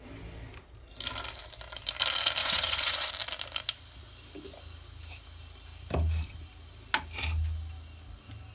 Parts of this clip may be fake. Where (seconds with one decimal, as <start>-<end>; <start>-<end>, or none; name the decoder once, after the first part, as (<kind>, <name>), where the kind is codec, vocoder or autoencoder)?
2.4-3.1 (vocoder, WaveNeXt)

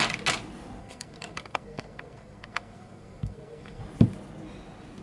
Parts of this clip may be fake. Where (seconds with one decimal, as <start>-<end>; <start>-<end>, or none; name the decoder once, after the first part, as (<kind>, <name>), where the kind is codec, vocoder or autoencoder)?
0.8-3.8 (codec, SNAC)

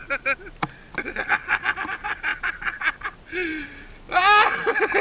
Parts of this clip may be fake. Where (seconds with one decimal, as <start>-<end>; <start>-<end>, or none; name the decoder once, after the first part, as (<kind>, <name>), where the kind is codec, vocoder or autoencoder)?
2.3-2.8 (vocoder, BigVGAN v2)

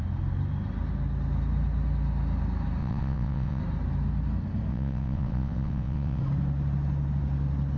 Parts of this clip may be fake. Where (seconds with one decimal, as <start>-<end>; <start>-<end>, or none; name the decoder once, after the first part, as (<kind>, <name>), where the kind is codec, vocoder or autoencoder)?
2.8-3.6 (vocoder, WaveNeXt); 4.7-6.2